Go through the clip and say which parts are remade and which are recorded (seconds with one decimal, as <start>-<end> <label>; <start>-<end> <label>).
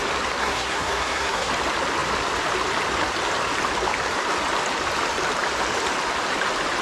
0.0-0.4 recorded; 0.4-1.5 remade; 1.5-6.8 recorded